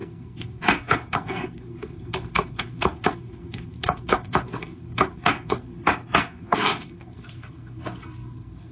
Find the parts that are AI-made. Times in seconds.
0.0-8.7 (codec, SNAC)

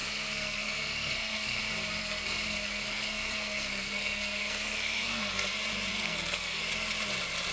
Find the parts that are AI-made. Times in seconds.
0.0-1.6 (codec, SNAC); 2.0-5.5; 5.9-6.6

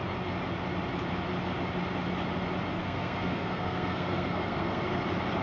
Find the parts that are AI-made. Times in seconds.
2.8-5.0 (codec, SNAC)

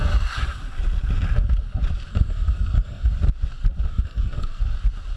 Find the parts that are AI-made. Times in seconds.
2.1-3.1 (codec, SNAC); 3.9-4.6